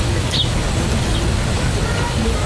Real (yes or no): yes